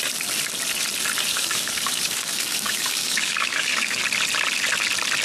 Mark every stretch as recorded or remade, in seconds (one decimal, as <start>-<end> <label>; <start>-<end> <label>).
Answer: 0.0-1.3 recorded; 1.3-4.0 remade; 4.0-5.2 recorded